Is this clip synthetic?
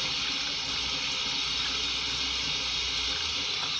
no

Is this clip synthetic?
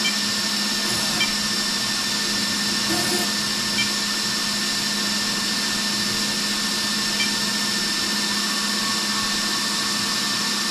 no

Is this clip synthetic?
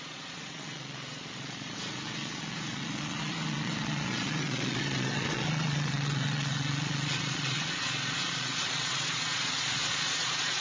yes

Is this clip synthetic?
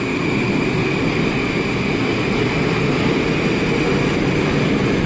no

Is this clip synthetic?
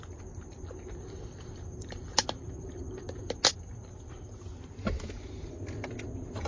no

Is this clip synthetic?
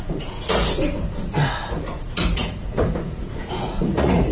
yes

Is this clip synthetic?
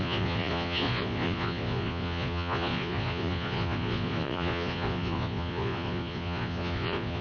yes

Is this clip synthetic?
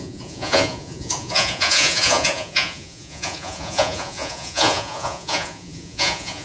yes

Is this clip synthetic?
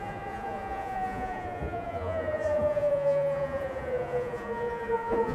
yes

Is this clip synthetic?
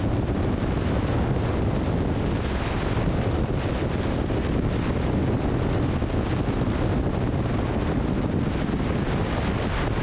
no